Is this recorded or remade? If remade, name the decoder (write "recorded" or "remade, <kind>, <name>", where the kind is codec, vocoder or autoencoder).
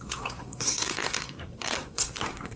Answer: remade, codec, SNAC